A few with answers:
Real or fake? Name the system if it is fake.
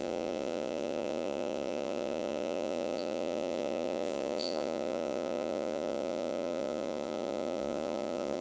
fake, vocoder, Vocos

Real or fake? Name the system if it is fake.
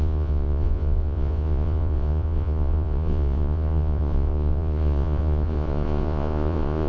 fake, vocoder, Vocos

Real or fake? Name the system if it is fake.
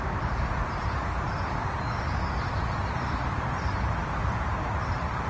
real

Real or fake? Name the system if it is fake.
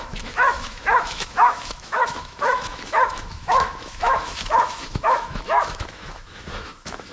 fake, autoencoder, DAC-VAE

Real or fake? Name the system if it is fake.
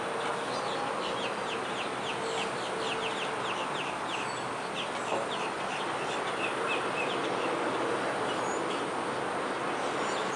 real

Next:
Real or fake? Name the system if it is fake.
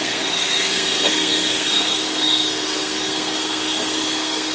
fake, codec, SNAC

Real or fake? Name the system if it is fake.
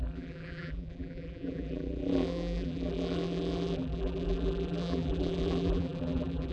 fake, vocoder, BigVGAN v2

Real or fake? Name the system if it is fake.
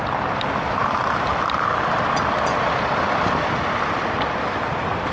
real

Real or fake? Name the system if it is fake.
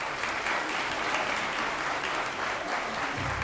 real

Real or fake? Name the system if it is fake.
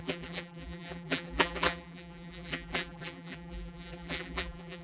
fake, vocoder, BigVGAN v2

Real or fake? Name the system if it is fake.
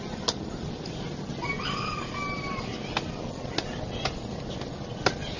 real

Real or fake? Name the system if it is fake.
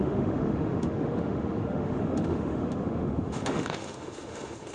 fake, autoencoder, DAC-VAE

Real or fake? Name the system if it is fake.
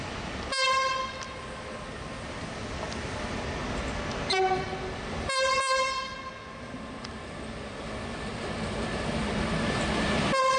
real